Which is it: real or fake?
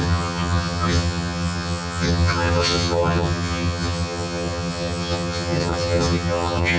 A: fake